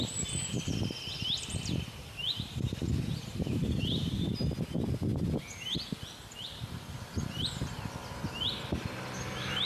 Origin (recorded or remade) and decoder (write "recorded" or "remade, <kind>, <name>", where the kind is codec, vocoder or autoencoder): remade, vocoder, BigVGAN v2